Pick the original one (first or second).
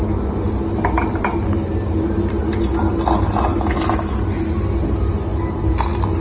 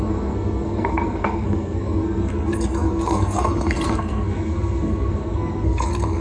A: first